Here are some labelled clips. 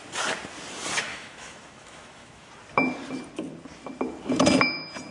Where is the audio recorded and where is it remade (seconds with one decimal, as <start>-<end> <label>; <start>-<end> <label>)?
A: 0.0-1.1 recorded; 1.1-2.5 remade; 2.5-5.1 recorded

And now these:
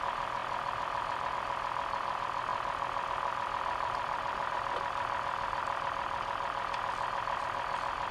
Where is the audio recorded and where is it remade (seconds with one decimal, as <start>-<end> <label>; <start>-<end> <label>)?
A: 0.0-8.1 recorded

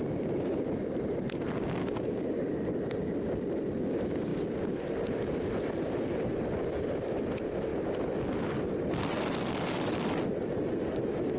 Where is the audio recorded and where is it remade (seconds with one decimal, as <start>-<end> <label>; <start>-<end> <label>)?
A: 0.0-1.8 recorded; 1.8-2.5 remade; 2.5-11.4 recorded

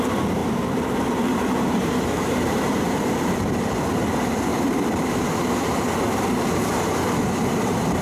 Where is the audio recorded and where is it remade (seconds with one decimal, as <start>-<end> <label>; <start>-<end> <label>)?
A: 0.0-0.4 recorded; 0.4-3.6 remade; 3.6-4.5 recorded; 4.5-8.0 remade

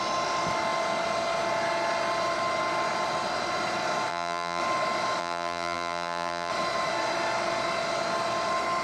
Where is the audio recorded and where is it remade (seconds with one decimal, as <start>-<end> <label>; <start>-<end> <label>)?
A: 0.0-4.1 recorded; 4.1-4.6 remade; 4.6-5.2 recorded; 5.2-6.5 remade; 6.5-8.8 recorded

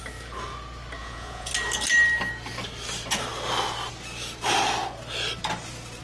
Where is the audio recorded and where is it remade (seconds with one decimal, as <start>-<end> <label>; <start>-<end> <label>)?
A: 0.0-1.0 recorded; 1.0-1.5 remade; 1.5-6.0 recorded

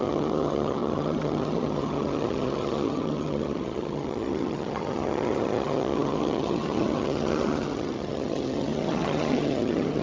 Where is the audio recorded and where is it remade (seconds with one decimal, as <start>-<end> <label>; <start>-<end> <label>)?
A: 0.0-10.0 remade

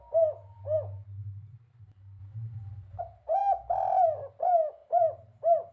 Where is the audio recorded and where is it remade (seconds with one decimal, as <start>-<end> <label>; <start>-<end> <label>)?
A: 0.0-2.2 recorded; 2.2-3.0 remade; 3.0-4.8 recorded; 4.8-5.7 remade